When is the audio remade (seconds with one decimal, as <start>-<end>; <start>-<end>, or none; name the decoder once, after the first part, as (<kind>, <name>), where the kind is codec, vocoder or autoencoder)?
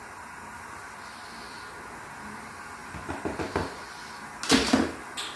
none